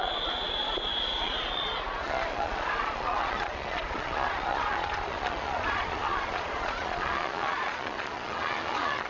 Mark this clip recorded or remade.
remade